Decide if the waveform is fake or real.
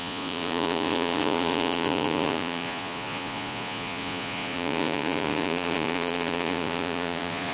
fake